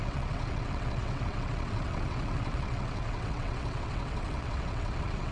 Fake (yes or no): yes